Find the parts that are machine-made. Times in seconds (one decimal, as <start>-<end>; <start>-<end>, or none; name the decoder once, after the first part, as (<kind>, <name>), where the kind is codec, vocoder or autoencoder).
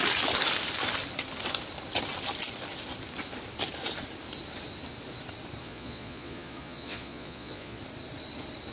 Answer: 5.6-7.8 (vocoder, Vocos)